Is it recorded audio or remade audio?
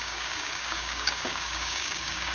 remade